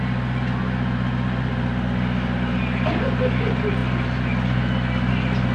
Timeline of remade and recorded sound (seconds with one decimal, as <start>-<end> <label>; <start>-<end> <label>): 0.0-5.5 recorded